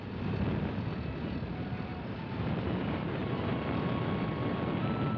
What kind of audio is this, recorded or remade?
recorded